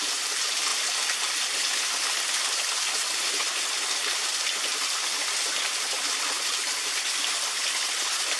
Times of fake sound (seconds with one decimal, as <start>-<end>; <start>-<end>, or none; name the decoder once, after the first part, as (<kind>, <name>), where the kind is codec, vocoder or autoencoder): none